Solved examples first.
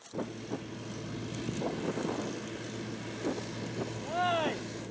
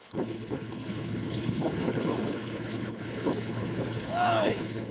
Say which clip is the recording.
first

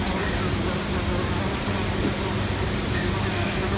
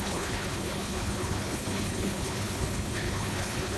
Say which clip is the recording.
first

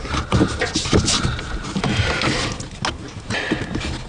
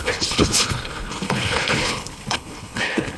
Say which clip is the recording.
first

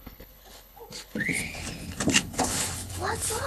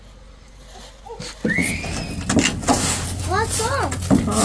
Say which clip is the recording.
second